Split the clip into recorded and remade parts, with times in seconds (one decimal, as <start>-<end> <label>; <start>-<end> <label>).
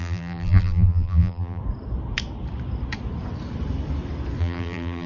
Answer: 0.0-1.6 remade; 1.6-4.4 recorded; 4.4-5.1 remade